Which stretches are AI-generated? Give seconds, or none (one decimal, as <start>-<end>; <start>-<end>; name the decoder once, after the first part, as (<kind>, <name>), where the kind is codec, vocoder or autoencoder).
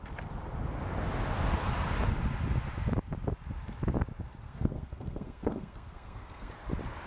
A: 4.4-6.5 (codec, SNAC)